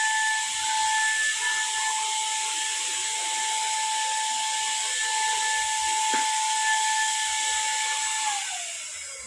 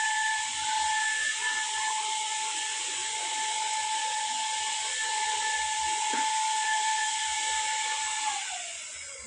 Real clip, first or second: first